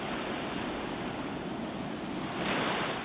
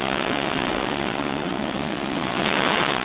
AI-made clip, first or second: second